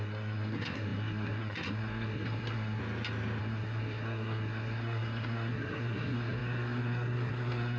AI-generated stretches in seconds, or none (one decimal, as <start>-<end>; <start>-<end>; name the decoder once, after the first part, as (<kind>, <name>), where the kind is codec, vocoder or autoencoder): 0.0-2.8 (codec, SNAC); 3.4-7.8